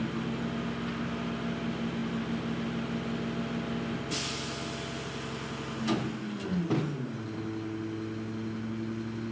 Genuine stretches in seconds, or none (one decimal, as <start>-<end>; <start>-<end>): 0.0-9.3